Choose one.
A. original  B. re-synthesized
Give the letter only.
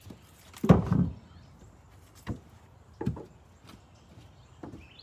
A